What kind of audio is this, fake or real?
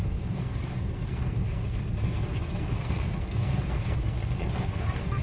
fake